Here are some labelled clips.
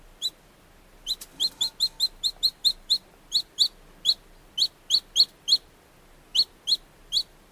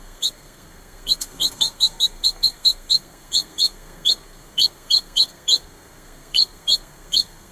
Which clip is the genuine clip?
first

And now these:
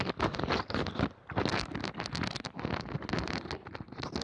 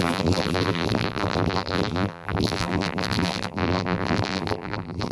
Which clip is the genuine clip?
first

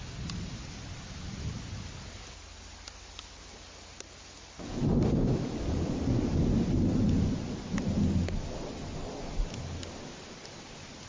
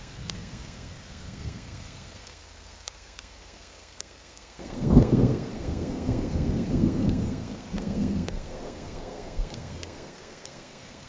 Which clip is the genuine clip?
first